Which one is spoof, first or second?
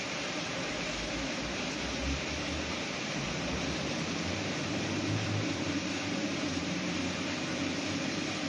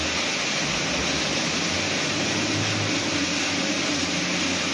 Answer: first